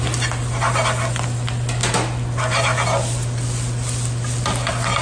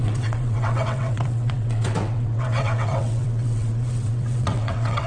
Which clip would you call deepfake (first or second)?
second